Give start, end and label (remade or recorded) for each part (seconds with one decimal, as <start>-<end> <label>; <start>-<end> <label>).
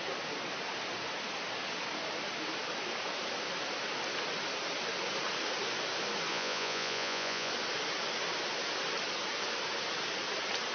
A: 0.0-6.3 recorded; 6.3-7.5 remade; 7.5-10.7 recorded